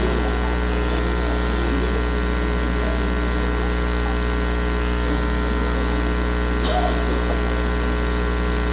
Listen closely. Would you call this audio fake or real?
real